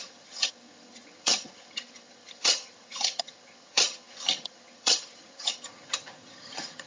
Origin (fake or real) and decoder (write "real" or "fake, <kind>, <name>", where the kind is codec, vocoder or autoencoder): fake, vocoder, HiFi-GAN